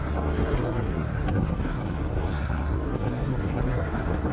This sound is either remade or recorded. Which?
remade